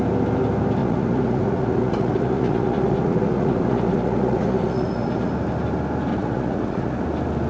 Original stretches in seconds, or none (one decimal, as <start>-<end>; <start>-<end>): 0.0-0.8; 5.3-6.1; 7.0-7.5